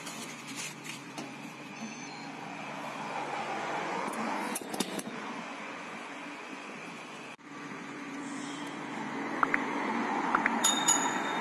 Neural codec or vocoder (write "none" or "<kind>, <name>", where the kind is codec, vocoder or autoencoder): vocoder, Vocos